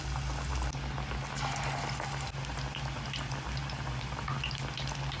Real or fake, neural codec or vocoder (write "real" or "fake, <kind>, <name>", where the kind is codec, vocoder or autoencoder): real